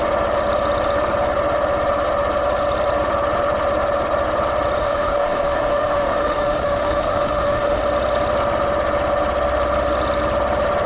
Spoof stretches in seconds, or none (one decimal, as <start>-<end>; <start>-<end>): 4.8-7.8